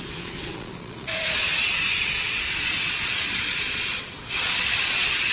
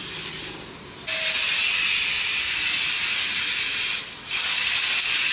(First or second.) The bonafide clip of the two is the second